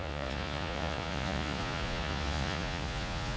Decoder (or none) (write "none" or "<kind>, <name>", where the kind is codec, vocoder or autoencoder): vocoder, Vocos